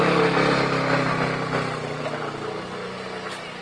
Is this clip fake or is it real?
real